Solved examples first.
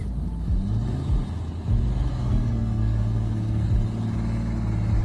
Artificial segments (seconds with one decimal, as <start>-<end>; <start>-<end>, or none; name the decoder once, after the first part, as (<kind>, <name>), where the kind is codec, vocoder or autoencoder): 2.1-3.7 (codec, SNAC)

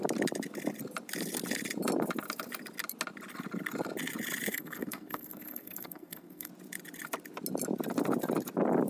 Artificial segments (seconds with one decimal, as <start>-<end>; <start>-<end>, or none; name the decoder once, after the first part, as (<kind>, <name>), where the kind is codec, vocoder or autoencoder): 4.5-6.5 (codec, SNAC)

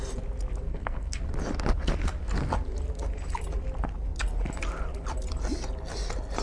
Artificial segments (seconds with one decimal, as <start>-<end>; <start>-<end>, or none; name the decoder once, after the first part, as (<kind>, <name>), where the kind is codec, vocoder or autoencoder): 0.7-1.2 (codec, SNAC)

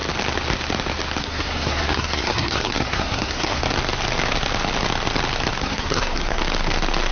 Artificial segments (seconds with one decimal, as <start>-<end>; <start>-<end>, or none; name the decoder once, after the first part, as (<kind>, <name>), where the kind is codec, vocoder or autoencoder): 1.2-3.6 (codec, SNAC); 5.6-6.4